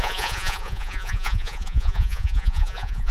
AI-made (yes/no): yes